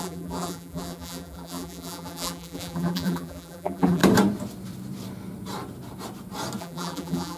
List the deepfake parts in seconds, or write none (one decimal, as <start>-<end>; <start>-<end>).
0.0-4.0; 6.6-7.4